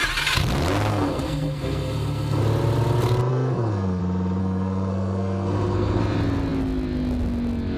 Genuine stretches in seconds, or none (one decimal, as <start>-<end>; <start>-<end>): 0.0-0.9; 2.4-3.3; 4.0-4.4; 6.0-7.8